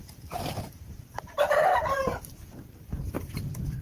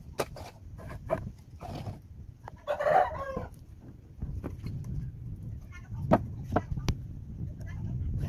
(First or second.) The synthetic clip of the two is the first